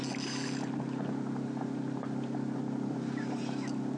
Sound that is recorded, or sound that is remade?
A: recorded